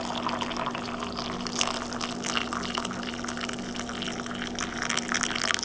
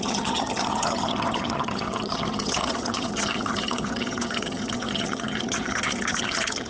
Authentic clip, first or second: first